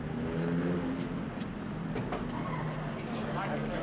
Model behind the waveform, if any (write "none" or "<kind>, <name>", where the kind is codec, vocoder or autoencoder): none